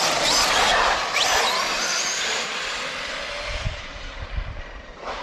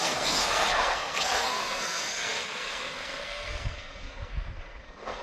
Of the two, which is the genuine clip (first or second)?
first